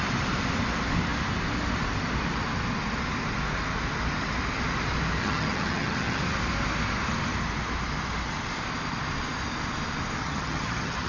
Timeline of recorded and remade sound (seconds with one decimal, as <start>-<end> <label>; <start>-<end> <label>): 0.0-5.2 recorded; 5.2-6.2 remade; 6.2-10.2 recorded; 10.2-11.1 remade

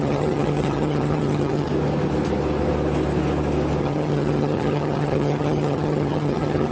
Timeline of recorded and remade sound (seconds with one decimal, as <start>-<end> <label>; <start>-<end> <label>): 0.0-1.7 remade; 1.7-3.8 recorded; 3.8-6.7 remade

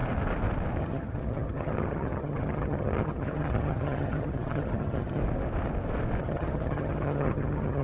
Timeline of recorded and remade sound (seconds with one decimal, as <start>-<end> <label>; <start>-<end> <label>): 0.0-0.8 recorded; 0.8-5.2 remade; 5.2-6.2 recorded; 6.2-7.8 remade

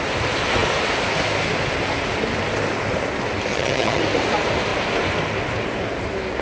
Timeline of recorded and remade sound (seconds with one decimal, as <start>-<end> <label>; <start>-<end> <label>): 0.0-3.5 recorded; 3.5-4.0 remade; 4.0-6.4 recorded

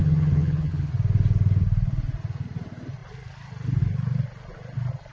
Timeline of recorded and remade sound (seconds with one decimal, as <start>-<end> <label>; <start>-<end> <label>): 0.0-0.9 remade; 0.9-5.1 recorded

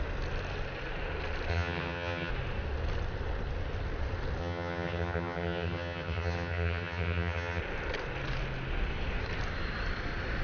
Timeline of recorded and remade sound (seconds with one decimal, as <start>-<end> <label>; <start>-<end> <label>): 0.0-1.5 recorded; 1.5-2.3 remade; 2.3-4.4 recorded; 4.4-7.6 remade; 7.6-10.4 recorded

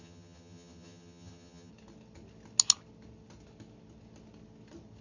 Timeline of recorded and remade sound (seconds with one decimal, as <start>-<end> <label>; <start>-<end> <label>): 0.0-1.7 remade; 1.7-5.0 recorded